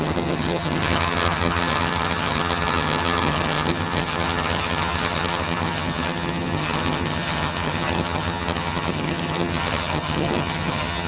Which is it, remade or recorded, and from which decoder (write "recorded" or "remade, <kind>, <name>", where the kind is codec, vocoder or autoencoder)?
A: remade, vocoder, HiFi-GAN